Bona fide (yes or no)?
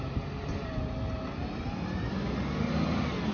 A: yes